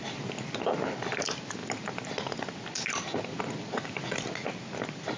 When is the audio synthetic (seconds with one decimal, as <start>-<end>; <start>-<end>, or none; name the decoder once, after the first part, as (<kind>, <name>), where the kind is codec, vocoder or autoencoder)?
none